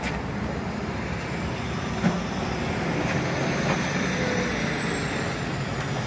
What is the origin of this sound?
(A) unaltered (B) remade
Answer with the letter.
A